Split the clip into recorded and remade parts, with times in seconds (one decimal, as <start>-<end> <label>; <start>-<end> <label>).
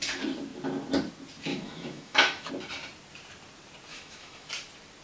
0.0-1.5 recorded; 1.5-2.5 remade; 2.5-3.9 recorded; 3.9-4.5 remade; 4.5-5.0 recorded